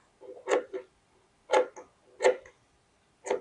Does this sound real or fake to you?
real